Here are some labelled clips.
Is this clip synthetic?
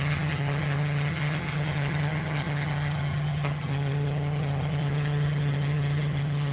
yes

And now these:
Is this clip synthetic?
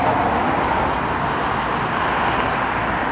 no